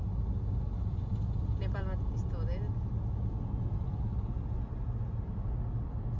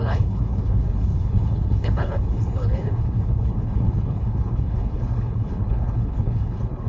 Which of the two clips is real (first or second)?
first